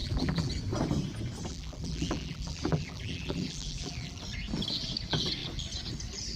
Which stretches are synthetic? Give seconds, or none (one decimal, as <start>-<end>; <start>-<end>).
0.0-0.5; 1.5-4.2